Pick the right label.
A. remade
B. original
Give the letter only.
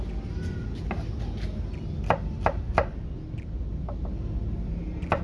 B